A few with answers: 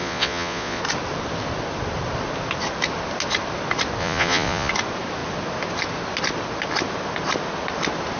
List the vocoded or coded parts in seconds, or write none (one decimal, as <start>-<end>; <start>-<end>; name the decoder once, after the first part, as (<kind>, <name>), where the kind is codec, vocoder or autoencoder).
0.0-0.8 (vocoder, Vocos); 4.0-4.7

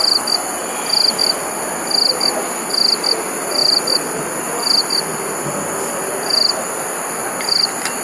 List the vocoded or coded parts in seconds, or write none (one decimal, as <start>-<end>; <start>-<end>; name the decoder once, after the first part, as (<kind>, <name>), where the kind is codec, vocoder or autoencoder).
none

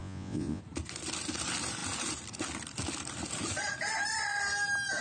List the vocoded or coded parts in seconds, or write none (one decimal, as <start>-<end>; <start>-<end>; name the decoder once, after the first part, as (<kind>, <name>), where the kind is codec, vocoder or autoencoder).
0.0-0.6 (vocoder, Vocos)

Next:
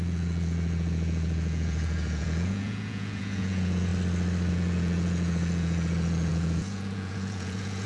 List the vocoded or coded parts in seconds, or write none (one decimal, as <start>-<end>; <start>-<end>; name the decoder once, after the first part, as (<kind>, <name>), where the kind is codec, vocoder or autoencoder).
0.0-3.9 (vocoder, Vocos); 4.5-7.9